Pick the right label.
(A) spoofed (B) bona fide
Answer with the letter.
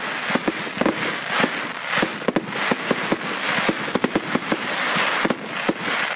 B